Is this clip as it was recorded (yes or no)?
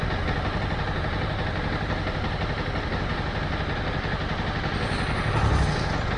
yes